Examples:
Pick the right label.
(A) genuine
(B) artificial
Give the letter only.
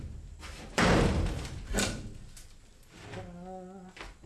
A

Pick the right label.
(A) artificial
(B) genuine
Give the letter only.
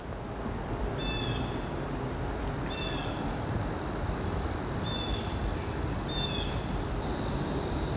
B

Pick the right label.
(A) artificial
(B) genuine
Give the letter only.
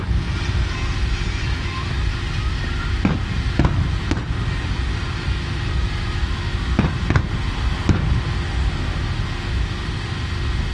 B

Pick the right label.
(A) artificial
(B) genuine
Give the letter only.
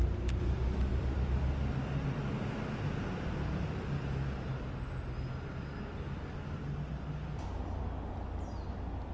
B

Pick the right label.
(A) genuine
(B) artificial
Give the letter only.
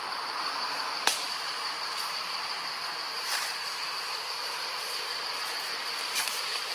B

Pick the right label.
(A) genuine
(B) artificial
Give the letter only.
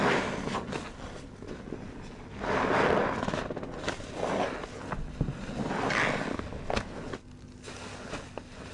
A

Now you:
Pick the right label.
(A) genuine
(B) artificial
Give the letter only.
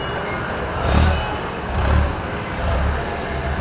A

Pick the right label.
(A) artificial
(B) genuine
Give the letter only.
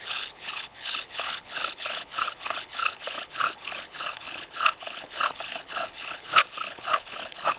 A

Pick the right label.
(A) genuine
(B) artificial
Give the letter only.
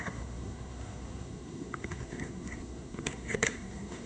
B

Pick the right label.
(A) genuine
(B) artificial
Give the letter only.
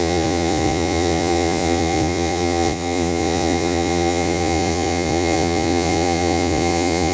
B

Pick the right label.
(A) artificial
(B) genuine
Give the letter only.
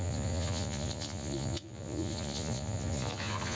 A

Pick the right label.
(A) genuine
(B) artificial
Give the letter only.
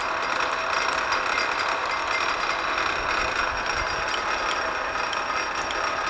A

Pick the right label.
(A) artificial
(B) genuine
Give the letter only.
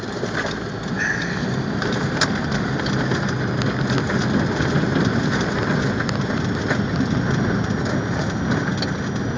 B